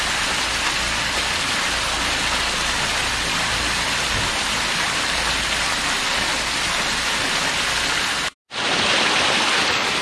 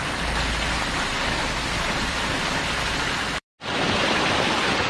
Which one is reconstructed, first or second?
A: second